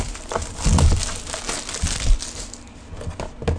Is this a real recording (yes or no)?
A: yes